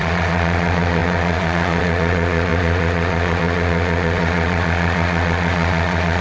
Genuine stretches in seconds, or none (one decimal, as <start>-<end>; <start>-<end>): none